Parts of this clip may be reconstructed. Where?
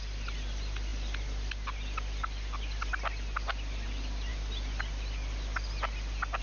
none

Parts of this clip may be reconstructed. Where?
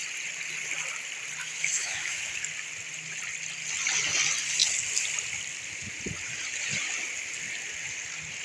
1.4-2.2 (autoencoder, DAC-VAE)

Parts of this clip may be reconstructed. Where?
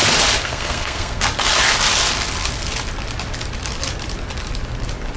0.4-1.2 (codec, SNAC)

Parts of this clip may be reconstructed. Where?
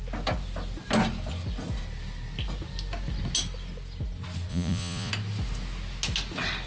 4.5-5.1 (vocoder, Vocos)